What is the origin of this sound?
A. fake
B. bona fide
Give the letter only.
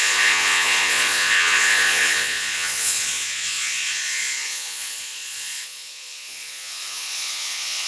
A